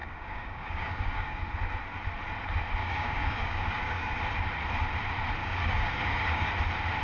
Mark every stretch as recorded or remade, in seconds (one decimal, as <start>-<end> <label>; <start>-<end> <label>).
0.0-1.5 remade; 1.5-2.8 recorded; 2.8-4.2 remade; 4.2-5.4 recorded; 5.4-6.5 remade; 6.5-7.0 recorded